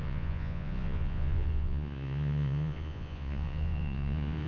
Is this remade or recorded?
remade